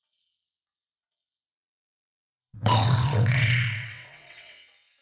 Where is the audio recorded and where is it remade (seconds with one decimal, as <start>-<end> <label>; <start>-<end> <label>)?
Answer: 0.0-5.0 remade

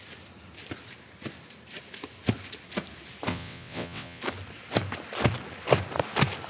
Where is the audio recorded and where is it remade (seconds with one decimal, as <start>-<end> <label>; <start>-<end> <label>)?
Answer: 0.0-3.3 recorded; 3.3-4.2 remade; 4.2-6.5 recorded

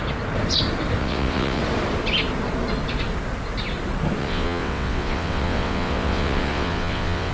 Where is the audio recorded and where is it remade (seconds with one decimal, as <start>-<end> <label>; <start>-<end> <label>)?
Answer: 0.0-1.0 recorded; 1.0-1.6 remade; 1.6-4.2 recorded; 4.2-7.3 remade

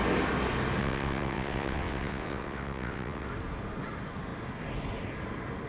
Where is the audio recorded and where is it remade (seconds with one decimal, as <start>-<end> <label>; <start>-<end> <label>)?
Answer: 0.0-0.8 recorded; 0.8-3.3 remade; 3.3-5.7 recorded

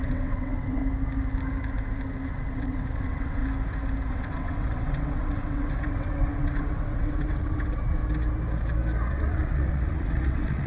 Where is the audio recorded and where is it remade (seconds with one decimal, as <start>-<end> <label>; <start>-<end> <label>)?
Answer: 0.0-0.8 remade; 0.8-2.5 recorded; 2.5-3.4 remade; 3.4-4.1 recorded; 4.1-8.0 remade; 8.0-9.1 recorded; 9.1-10.7 remade